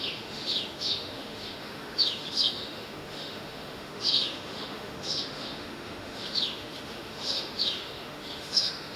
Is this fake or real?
fake